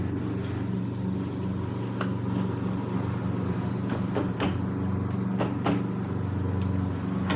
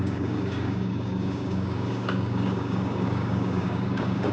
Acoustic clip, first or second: first